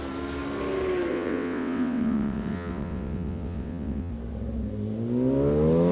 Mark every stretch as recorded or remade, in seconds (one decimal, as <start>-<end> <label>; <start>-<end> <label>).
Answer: 0.0-1.1 recorded; 1.1-4.1 remade; 4.1-5.9 recorded